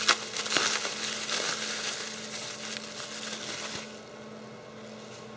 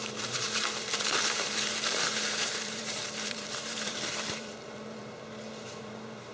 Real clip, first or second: first